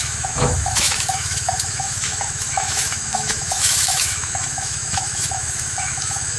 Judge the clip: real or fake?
fake